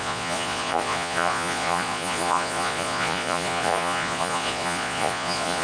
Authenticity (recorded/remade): remade